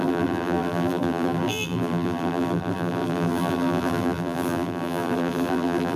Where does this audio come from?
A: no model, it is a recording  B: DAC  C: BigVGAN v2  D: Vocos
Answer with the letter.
C